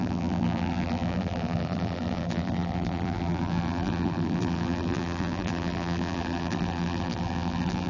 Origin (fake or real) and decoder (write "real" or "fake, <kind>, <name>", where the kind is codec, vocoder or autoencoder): fake, vocoder, BigVGAN v2